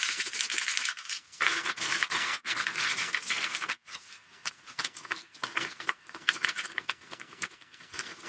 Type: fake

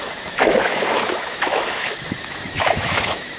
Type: fake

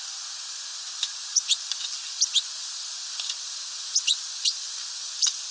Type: real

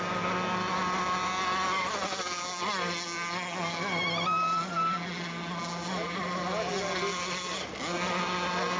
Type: real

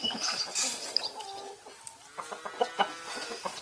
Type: real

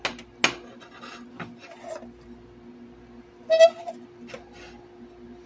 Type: real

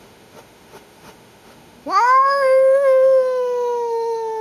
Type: fake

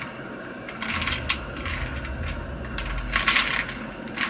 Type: real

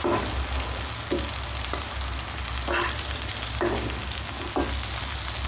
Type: real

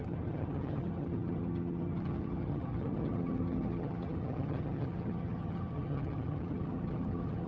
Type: fake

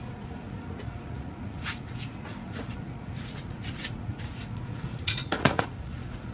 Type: fake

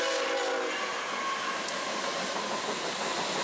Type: real